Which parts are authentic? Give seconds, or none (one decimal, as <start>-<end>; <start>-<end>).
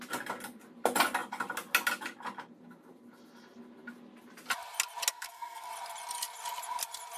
0.0-5.1; 5.7-7.2